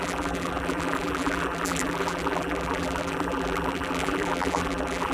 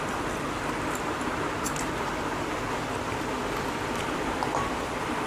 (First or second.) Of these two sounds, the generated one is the first